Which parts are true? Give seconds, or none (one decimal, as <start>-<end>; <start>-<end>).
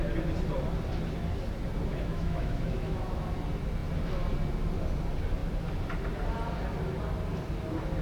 0.0-1.9; 3.2-8.0